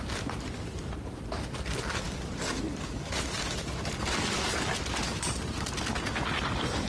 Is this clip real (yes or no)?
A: yes